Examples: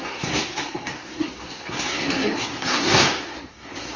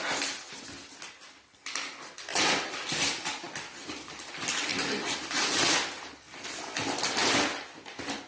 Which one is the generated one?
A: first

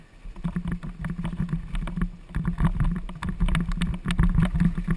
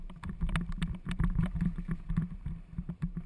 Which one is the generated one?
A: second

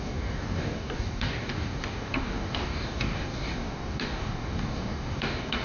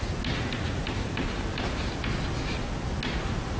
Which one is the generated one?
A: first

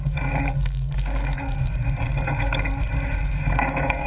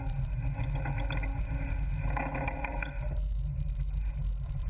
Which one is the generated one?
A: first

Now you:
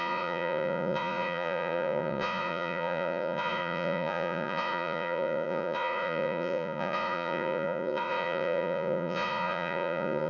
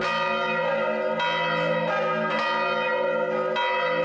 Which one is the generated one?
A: first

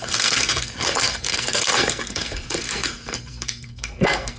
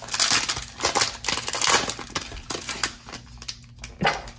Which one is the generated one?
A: first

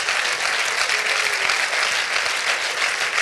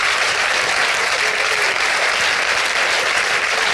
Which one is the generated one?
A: second